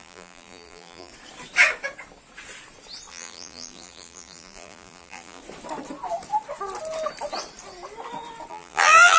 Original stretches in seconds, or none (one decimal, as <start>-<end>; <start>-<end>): 1.1-3.1; 5.4-8.5